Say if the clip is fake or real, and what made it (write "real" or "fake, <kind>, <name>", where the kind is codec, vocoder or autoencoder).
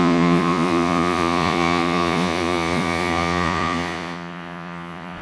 fake, vocoder, Vocos